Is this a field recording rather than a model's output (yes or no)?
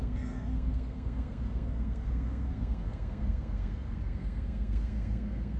no